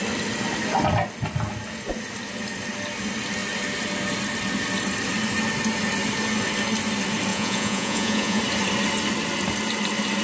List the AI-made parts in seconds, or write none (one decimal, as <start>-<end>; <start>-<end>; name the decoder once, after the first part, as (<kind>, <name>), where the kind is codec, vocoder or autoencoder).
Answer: 7.3-8.4 (vocoder, Vocos)